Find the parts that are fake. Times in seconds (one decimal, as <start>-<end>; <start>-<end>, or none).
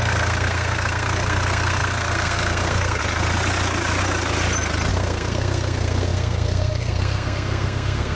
0.0-3.0; 4.9-8.1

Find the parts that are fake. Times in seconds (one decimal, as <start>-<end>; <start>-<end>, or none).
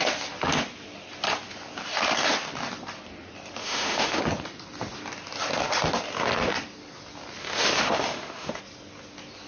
3.6-4.2; 7.4-8.6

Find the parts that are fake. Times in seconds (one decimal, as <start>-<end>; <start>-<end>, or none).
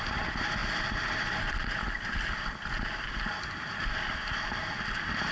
none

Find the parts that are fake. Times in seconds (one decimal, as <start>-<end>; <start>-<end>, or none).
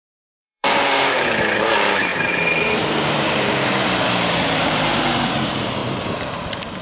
0.0-5.8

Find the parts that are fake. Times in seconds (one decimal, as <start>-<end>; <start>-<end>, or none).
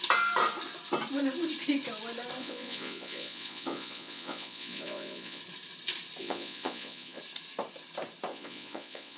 2.4-5.4; 6.2-7.2; 8.3-9.2